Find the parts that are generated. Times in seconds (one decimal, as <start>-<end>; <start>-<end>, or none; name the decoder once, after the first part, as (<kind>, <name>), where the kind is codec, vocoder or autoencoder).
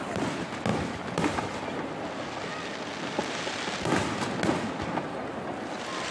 0.7-2.0 (vocoder, BigVGAN v2)